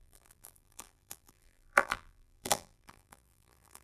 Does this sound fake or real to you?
fake